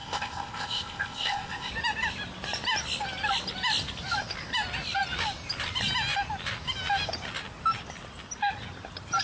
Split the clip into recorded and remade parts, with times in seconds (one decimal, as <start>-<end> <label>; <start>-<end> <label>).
0.0-1.7 remade; 1.7-9.2 recorded